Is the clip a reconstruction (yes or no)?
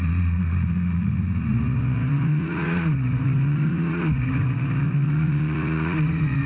yes